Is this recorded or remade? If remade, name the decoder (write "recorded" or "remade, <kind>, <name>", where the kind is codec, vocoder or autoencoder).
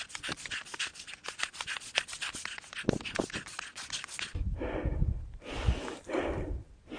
recorded